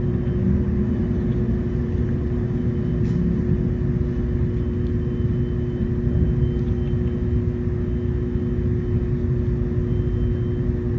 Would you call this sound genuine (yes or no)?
yes